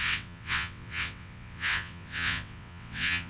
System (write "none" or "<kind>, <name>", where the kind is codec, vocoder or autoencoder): vocoder, WaveNeXt